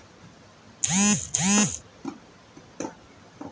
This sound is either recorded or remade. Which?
recorded